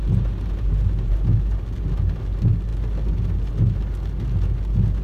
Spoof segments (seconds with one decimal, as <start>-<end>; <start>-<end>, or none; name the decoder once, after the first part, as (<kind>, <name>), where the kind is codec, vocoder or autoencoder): none